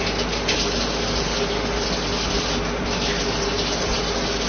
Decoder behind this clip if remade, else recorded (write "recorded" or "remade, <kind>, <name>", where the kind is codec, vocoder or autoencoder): recorded